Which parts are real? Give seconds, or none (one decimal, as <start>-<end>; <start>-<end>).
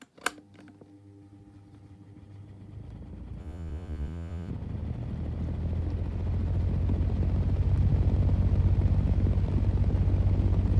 0.0-3.4; 4.5-10.8